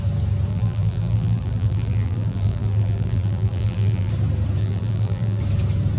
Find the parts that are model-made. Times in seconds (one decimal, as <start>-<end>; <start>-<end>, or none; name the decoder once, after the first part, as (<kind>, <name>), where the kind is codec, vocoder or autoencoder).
0.5-4.1 (vocoder, BigVGAN v2); 4.6-5.4